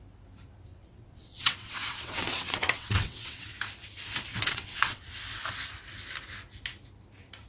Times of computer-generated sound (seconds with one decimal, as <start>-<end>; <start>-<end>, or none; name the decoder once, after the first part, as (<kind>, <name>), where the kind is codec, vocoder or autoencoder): 0.7-3.5 (vocoder, WaveNeXt); 4.3-5.0